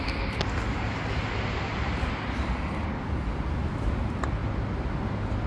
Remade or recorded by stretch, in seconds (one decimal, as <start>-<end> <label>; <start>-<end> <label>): 0.0-5.5 recorded